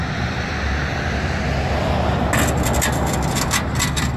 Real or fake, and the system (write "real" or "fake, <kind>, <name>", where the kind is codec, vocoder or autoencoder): real